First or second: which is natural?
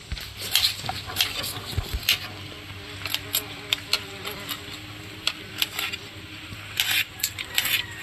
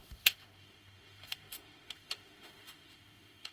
first